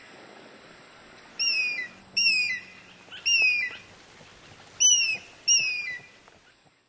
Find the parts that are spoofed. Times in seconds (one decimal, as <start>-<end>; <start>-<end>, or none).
0.0-1.3; 2.0-2.4; 6.5-6.9